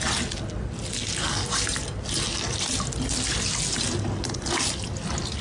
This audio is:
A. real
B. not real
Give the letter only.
A